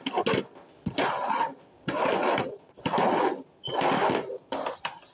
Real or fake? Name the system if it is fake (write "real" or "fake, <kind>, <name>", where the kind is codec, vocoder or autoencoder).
real